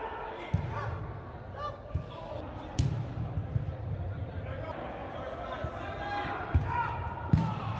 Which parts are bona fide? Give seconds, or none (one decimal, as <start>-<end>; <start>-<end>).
0.0-7.8